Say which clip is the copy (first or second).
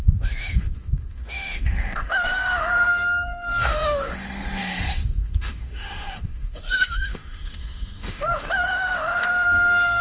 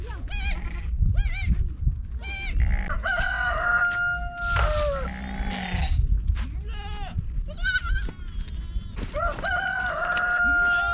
first